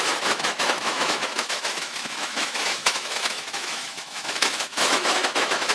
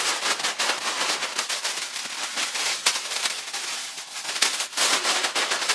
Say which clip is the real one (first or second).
second